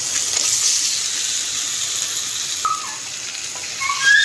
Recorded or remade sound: recorded